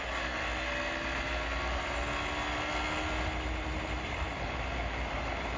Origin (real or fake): real